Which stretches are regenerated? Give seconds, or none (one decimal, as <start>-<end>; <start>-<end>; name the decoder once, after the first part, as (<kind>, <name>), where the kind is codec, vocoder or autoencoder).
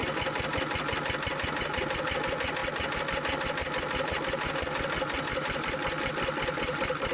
none